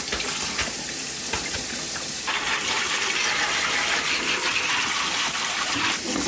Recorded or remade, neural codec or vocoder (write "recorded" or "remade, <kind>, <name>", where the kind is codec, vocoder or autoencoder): recorded